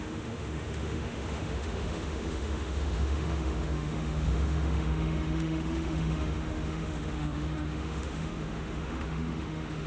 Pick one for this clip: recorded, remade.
remade